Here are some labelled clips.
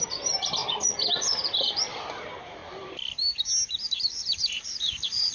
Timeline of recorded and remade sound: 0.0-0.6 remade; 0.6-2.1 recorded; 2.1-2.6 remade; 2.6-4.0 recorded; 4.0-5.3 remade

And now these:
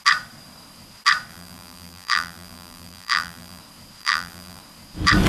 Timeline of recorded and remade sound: 0.0-1.3 recorded; 1.3-3.6 remade; 3.6-4.0 recorded; 4.0-4.6 remade; 4.6-5.3 recorded

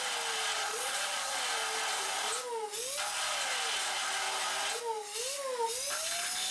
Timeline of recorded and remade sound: 0.0-0.5 recorded; 0.5-1.4 remade; 1.4-6.5 recorded

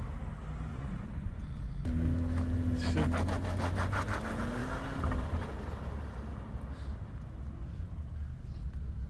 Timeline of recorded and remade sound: 0.0-0.7 recorded; 0.7-1.9 remade; 1.9-9.1 recorded